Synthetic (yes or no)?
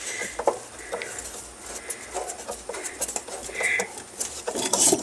no